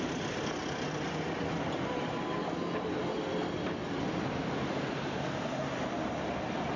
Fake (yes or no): no